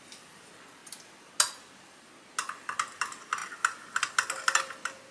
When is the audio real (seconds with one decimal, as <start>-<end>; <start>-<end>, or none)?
0.0-5.1